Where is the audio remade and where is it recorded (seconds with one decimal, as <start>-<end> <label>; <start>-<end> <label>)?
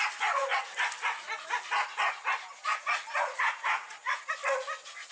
0.0-2.7 recorded; 2.7-4.3 remade; 4.3-5.1 recorded